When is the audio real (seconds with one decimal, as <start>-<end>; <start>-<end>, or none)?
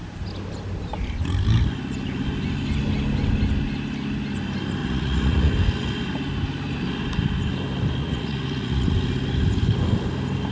0.0-4.8; 5.5-8.0; 8.9-10.5